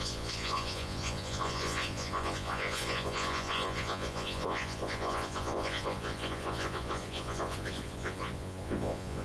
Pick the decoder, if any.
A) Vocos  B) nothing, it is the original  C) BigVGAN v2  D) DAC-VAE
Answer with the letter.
A